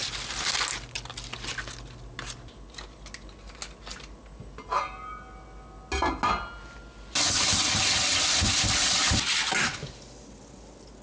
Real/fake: real